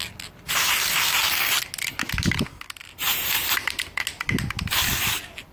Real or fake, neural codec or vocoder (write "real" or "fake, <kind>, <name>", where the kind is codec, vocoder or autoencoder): real